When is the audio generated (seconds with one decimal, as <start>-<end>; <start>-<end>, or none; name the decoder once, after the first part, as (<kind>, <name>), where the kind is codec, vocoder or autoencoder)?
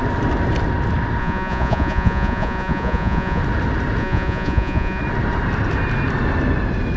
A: 1.2-3.4 (vocoder, Vocos); 4.0-5.0